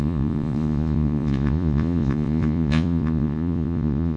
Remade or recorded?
remade